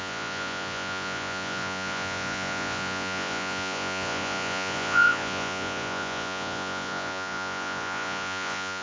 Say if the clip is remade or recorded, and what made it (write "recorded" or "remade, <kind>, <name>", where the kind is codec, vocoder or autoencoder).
remade, vocoder, Vocos